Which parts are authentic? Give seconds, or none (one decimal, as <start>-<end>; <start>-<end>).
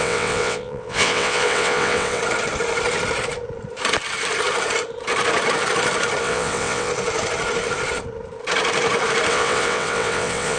2.2-6.2; 6.9-9.3